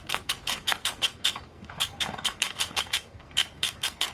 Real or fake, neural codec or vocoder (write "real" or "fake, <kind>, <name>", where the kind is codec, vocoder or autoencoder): fake, codec, SNAC